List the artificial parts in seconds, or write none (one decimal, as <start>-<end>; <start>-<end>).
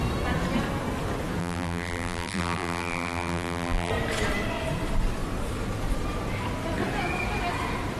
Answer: 1.4-3.9